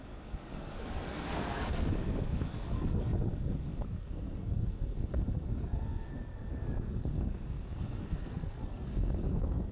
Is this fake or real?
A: fake